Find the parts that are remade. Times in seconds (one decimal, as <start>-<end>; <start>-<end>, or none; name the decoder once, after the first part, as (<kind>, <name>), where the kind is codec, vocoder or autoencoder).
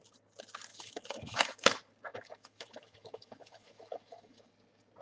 0.7-1.7 (autoencoder, DAC-VAE); 2.1-4.5